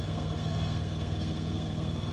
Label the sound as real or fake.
fake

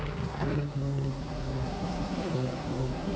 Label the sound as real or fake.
fake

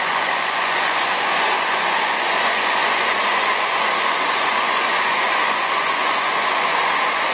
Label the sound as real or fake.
fake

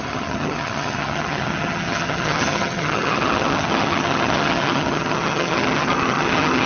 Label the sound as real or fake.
fake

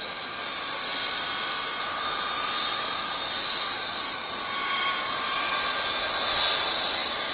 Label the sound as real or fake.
real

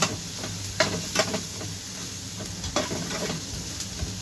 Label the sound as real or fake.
real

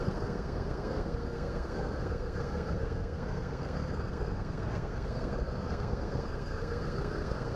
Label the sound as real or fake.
fake